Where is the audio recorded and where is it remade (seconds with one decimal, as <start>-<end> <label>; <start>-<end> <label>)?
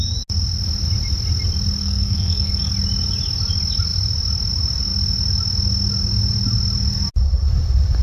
0.0-1.8 recorded; 1.8-2.7 remade; 2.7-8.0 recorded